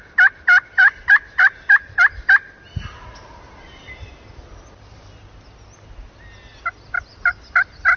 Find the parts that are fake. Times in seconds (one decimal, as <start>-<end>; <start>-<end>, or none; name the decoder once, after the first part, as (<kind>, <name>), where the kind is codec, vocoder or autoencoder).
none

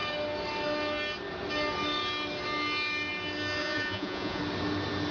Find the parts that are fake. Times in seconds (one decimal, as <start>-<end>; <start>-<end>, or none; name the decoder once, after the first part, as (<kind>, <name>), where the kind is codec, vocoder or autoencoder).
3.6-4.4 (vocoder, Vocos)

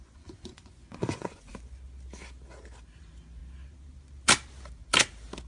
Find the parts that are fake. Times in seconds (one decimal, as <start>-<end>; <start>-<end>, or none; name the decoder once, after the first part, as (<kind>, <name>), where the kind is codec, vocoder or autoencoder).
0.0-1.5 (vocoder, Vocos)

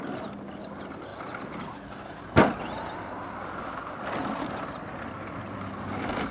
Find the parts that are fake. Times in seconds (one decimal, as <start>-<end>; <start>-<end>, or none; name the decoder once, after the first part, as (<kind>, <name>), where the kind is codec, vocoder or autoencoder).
none

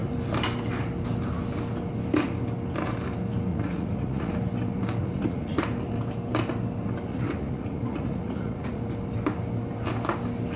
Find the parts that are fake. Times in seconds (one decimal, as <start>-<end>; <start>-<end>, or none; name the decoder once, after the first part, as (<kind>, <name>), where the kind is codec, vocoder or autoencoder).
3.5-4.3 (vocoder, Vocos); 5.0-5.6; 7.1-8.8

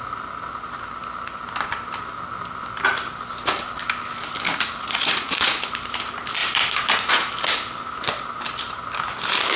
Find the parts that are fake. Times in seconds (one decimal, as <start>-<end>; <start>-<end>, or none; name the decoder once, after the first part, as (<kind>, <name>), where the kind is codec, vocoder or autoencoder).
4.5-5.6 (vocoder, Vocos)

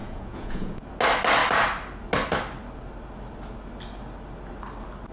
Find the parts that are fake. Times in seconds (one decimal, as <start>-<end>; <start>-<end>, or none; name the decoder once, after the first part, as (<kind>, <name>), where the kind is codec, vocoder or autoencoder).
0.0-0.9 (vocoder, Vocos)

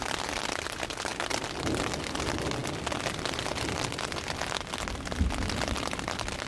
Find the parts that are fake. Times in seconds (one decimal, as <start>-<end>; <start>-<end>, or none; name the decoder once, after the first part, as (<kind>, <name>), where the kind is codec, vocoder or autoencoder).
none